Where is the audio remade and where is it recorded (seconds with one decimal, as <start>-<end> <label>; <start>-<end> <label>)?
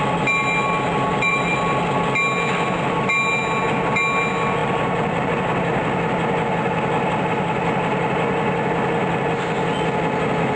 0.0-1.1 recorded; 1.1-1.6 remade; 1.6-4.6 recorded; 4.6-5.3 remade; 5.3-10.6 recorded